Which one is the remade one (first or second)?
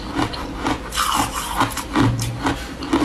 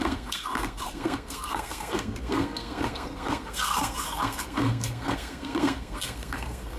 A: second